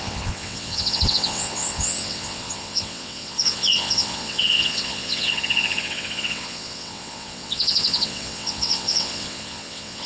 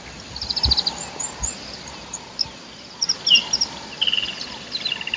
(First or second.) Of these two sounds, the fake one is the first